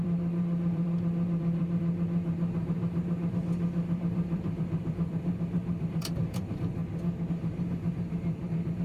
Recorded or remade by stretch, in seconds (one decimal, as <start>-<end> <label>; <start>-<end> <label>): 0.0-6.8 remade; 6.8-7.3 recorded; 7.3-8.8 remade